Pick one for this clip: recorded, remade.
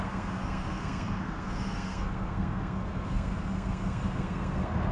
remade